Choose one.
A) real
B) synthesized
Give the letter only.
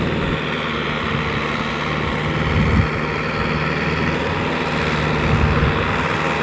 A